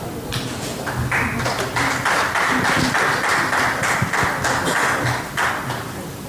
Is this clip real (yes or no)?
yes